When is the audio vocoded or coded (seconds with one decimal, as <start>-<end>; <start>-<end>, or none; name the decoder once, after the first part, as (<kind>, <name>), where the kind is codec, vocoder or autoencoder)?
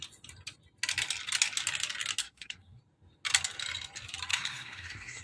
2.2-2.8 (codec, SNAC); 4.3-5.2